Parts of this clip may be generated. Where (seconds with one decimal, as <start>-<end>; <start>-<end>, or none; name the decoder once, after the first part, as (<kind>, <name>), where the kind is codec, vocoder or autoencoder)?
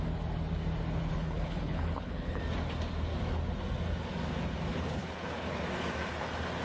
1.1-2.4 (codec, HILCodec); 4.7-5.6